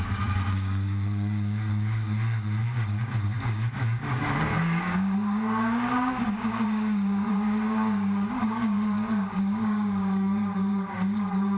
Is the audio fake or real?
fake